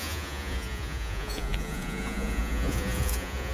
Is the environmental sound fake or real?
fake